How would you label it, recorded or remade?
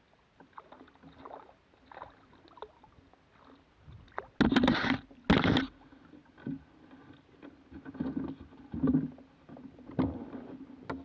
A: recorded